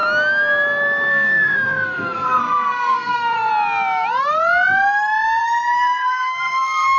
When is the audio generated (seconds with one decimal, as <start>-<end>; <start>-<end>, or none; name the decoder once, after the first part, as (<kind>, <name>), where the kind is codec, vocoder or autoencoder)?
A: 1.1-3.5 (codec, SNAC); 5.4-7.0